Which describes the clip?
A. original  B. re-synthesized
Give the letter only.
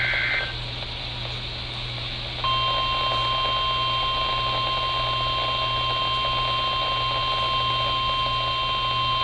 A